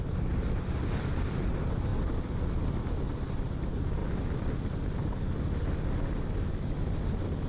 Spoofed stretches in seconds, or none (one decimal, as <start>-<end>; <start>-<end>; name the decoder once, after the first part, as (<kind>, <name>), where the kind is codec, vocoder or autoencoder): 0.0-4.0 (vocoder, BigVGAN v2); 6.5-7.5